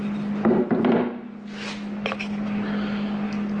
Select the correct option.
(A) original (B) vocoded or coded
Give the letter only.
A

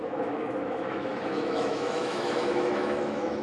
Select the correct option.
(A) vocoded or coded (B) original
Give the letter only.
A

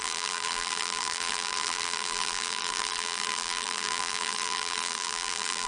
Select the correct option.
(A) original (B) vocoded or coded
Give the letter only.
B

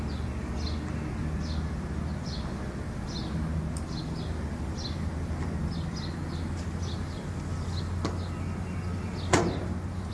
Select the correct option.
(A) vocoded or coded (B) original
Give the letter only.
B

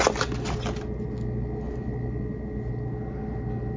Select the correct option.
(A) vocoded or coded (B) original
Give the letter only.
B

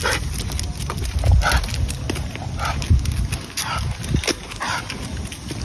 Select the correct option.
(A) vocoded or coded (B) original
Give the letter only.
B